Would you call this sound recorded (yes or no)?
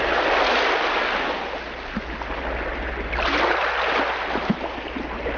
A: yes